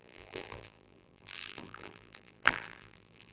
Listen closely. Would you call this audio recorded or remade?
remade